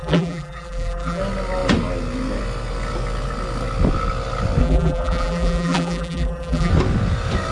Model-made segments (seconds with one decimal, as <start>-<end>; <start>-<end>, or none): 0.0-1.2; 4.6-6.7